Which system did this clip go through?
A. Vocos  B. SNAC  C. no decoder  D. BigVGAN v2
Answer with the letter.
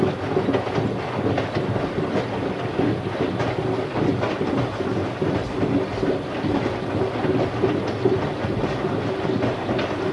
C